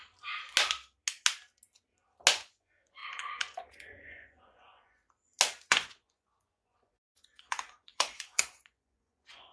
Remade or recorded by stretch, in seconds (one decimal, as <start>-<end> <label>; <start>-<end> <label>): 0.0-2.3 recorded; 2.3-5.0 remade; 5.0-5.7 recorded; 5.7-9.5 remade